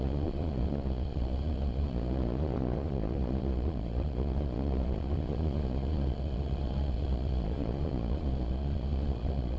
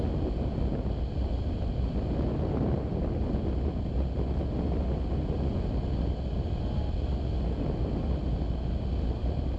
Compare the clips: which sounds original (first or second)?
second